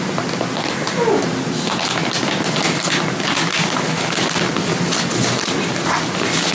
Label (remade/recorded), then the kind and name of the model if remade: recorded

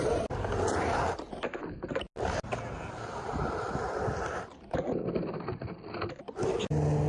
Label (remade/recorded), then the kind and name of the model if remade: recorded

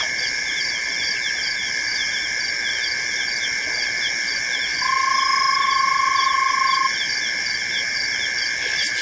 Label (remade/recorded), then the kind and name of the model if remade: recorded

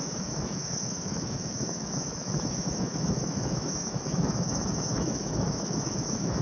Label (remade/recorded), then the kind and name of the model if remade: remade, autoencoder, DAC-VAE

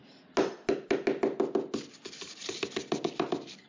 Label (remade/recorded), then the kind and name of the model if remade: recorded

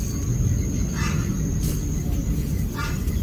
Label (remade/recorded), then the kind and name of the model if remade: recorded